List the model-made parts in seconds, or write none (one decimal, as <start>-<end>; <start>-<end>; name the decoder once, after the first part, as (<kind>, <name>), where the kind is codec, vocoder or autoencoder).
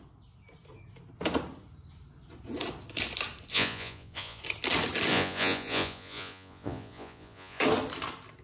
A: 3.5-4.4 (vocoder, Vocos); 5.1-7.6